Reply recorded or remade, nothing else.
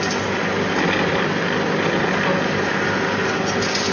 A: recorded